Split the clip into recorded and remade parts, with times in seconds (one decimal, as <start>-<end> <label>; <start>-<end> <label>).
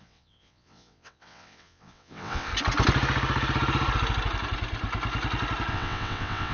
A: 0.0-2.5 remade; 2.5-5.7 recorded; 5.7-6.5 remade